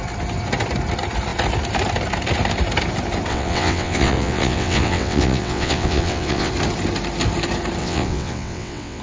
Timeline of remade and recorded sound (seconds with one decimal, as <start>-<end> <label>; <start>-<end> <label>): 0.0-3.3 recorded; 3.3-6.5 remade; 6.5-7.8 recorded; 7.8-9.0 remade